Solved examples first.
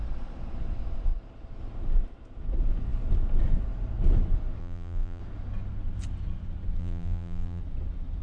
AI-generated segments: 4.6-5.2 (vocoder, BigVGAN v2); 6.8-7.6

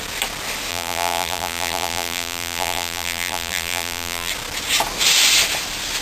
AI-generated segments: 0.7-4.3 (vocoder, BigVGAN v2)

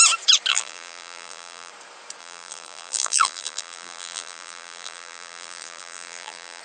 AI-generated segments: 0.5-1.7 (vocoder, BigVGAN v2); 2.2-6.6

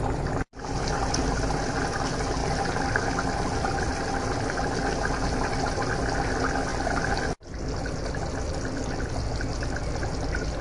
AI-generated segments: none

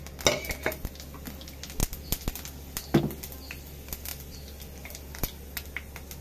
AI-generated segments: none

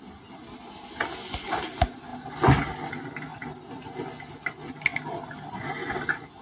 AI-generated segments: none

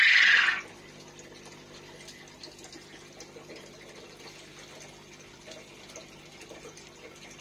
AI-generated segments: none